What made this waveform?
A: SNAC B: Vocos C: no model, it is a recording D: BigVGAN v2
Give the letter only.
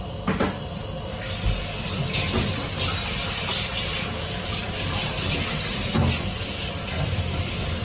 C